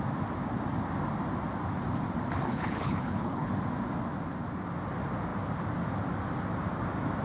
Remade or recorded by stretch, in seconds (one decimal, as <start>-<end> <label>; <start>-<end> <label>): 0.0-2.5 recorded; 2.5-3.5 remade; 3.5-7.2 recorded